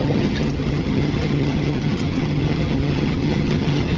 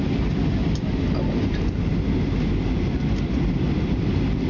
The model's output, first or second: first